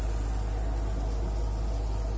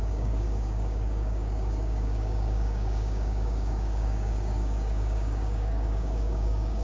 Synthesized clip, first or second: second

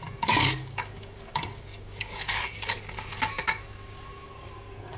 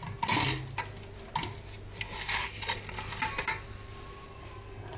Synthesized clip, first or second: first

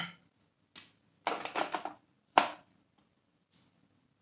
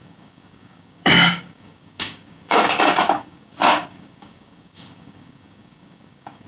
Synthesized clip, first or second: second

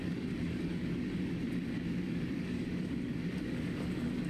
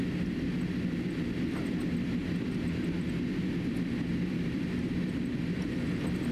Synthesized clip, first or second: first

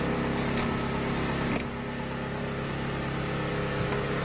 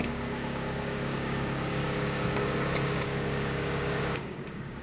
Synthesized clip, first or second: second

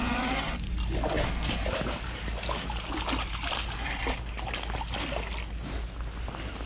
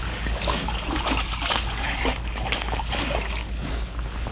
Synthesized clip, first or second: second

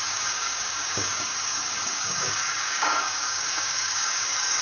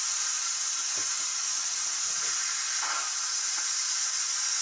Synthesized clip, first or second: first